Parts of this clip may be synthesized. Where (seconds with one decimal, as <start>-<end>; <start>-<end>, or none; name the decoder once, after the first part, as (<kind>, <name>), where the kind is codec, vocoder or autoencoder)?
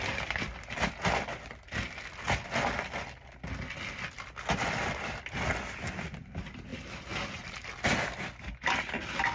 none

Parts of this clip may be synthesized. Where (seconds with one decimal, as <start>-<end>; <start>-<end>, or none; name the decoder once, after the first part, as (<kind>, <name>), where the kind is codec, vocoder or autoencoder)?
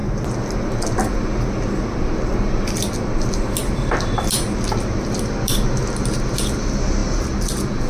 none